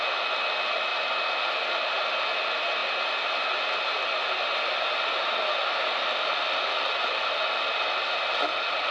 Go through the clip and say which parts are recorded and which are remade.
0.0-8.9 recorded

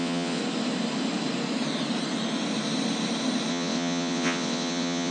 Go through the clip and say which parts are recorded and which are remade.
0.0-0.4 remade; 0.4-3.5 recorded; 3.5-5.1 remade

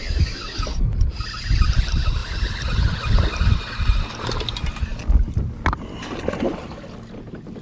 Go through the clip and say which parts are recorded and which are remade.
0.0-7.6 recorded